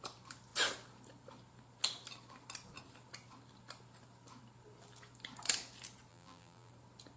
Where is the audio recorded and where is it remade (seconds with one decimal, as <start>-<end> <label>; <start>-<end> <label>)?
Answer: 0.0-6.1 recorded; 6.1-6.7 remade; 6.7-7.2 recorded